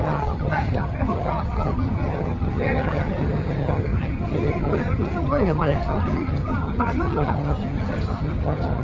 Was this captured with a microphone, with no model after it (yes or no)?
no